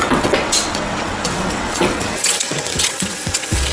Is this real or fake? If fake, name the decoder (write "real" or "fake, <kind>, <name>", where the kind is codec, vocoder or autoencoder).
fake, vocoder, WaveNeXt